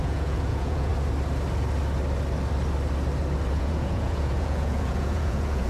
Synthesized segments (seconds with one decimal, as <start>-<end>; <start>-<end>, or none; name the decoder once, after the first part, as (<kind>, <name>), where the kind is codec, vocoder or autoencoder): 0.0-0.9 (vocoder, Vocos); 3.5-5.7